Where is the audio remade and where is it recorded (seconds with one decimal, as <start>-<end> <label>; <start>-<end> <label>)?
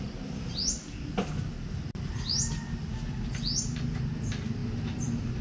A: 0.0-5.4 recorded